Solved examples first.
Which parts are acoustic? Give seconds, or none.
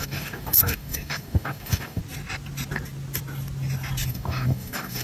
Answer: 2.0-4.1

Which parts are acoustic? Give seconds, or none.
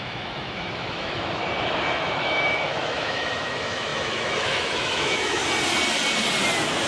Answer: 1.4-1.9; 5.4-6.9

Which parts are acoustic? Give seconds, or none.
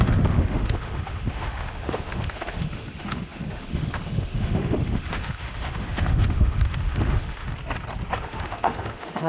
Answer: 7.5-8.2